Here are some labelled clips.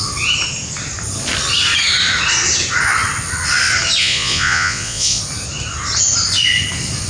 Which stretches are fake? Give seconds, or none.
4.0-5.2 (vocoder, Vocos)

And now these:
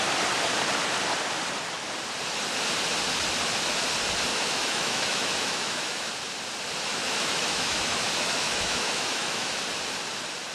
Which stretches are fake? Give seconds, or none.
4.3-6.1 (autoencoder, DAC-VAE); 6.9-9.5

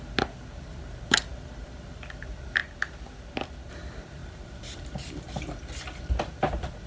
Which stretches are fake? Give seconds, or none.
1.3-2.2 (vocoder, BigVGAN v2); 4.2-6.0